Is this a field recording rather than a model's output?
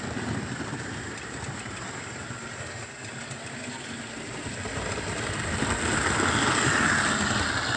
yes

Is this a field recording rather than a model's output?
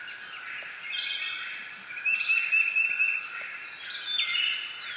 yes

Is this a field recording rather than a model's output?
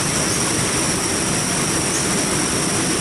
yes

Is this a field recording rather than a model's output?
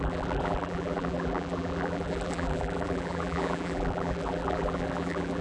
no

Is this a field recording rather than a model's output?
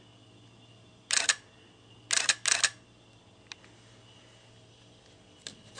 yes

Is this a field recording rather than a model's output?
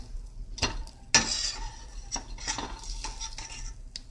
yes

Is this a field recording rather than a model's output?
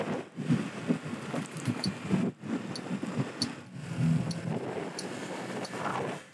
yes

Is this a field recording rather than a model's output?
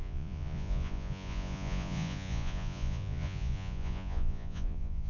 no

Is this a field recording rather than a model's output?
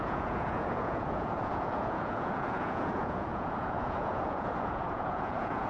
no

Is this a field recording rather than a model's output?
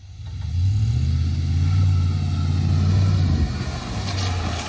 yes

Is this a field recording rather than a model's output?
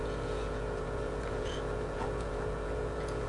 no